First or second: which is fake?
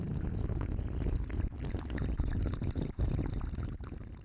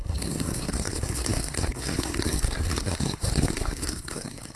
second